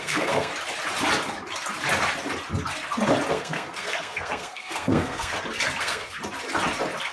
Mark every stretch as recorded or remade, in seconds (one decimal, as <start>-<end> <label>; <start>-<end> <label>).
0.0-0.5 remade; 0.5-3.3 recorded; 3.3-5.3 remade; 5.3-5.8 recorded; 5.8-6.2 remade; 6.2-7.1 recorded